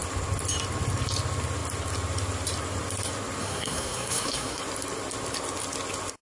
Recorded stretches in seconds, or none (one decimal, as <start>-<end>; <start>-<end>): 0.0-3.4; 4.6-6.2